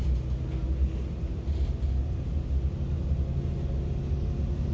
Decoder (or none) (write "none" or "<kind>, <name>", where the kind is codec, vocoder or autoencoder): none